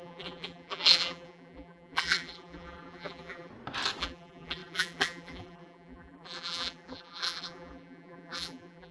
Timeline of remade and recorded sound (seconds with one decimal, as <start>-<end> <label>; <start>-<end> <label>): 0.0-3.5 remade; 3.5-4.0 recorded; 4.0-8.9 remade